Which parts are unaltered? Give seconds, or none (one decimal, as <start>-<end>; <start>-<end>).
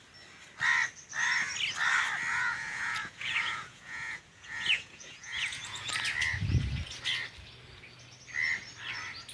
0.0-2.3; 5.9-9.3